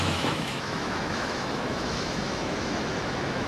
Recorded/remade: remade